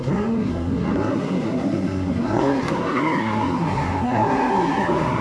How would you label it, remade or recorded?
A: remade